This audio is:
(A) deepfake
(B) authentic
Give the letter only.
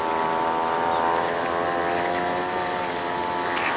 B